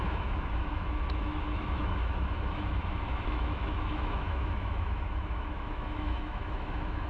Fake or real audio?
fake